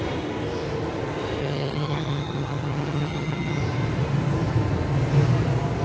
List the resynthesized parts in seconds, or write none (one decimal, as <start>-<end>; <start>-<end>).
1.4-3.6